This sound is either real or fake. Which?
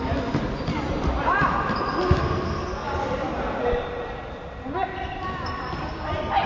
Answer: real